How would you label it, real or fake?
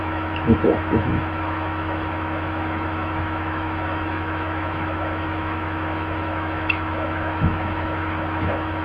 fake